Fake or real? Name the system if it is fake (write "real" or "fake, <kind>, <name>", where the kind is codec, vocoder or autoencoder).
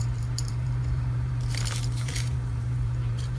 fake, vocoder, BigVGAN v2